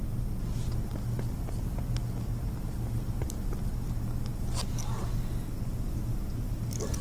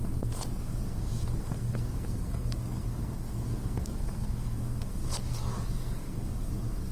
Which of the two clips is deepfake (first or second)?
second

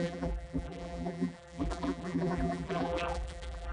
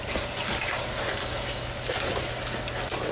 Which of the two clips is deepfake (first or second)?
first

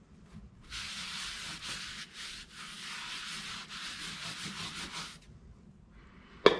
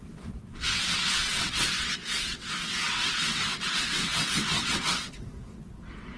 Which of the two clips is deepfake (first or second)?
second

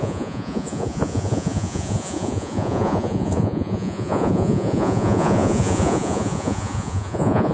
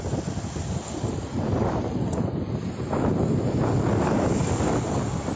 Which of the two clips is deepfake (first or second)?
first